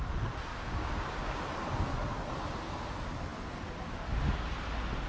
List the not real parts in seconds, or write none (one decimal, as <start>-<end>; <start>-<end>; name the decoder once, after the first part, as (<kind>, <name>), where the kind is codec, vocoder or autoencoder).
0.5-1.4 (codec, DAC)

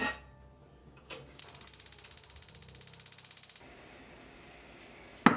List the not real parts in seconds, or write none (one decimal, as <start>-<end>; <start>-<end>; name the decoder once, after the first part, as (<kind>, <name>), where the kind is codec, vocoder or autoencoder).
0.8-1.4 (codec, DAC)